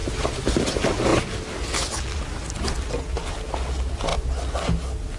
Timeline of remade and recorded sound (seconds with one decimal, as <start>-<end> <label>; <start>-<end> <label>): 0.0-0.6 remade; 0.6-5.2 recorded